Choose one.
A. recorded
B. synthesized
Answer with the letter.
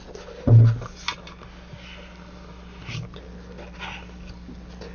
A